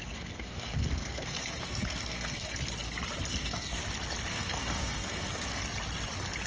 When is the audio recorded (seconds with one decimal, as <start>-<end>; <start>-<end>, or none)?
2.5-3.3; 3.8-4.3; 5.6-6.5